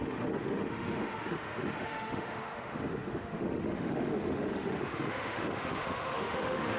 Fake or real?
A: fake